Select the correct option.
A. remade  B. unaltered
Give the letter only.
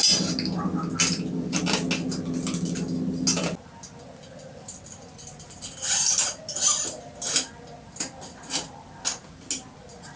B